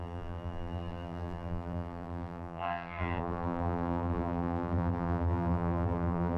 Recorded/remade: remade